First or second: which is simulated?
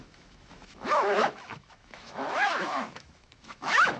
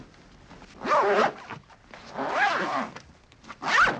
first